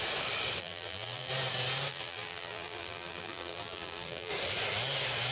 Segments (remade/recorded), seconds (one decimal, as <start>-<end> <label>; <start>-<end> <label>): 0.0-0.6 recorded; 0.6-1.3 remade; 1.3-1.9 recorded; 1.9-4.3 remade; 4.3-5.3 recorded